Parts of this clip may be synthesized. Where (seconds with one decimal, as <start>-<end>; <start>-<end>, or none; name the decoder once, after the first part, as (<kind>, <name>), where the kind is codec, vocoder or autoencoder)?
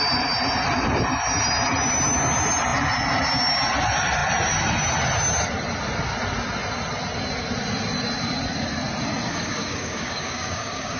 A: 9.3-11.0 (codec, DAC)